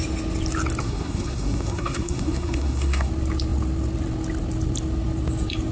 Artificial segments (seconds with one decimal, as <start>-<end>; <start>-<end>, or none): 0.8-3.1